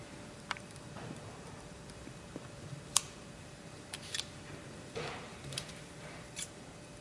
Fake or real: fake